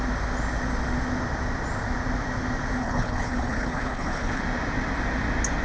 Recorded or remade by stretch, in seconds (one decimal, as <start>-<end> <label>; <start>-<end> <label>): 0.0-2.8 recorded; 2.8-4.4 remade; 4.4-5.6 recorded